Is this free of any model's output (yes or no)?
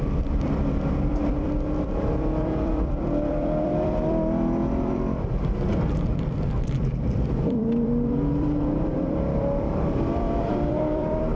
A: no